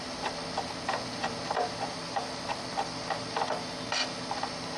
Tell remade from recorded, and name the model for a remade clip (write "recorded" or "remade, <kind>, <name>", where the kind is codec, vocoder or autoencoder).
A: remade, vocoder, BigVGAN v2